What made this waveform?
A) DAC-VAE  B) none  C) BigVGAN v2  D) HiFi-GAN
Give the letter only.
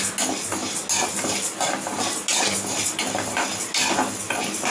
B